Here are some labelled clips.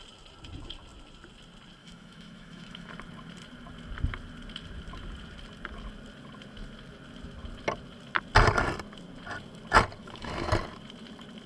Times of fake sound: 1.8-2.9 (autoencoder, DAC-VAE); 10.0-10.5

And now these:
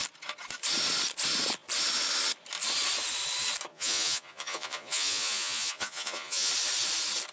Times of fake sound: 3.7-6.5 (vocoder, Vocos)

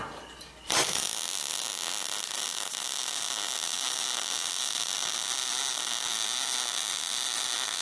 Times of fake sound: none

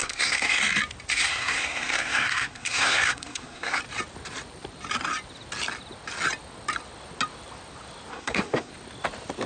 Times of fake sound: 0.0-0.6 (codec, SNAC); 1.1-3.8; 8.1-8.7

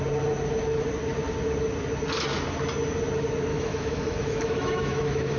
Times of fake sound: 3.5-5.4 (autoencoder, DAC-VAE)

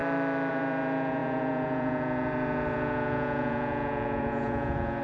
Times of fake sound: 0.5-5.0 (vocoder, Vocos)

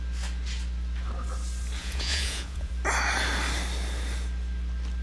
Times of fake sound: 1.8-2.7 (vocoder, Vocos)